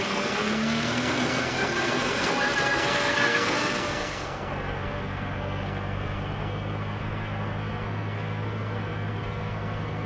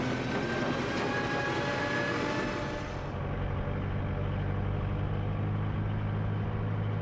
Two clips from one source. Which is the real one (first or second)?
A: second